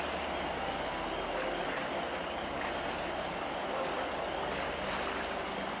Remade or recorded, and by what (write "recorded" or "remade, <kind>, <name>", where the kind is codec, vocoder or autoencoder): recorded